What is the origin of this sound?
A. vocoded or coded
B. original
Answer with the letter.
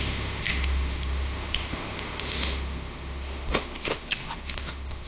A